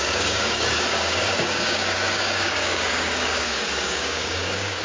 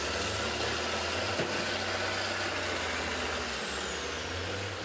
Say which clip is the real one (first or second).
second